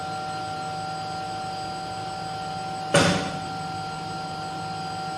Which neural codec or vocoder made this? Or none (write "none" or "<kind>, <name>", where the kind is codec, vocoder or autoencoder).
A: none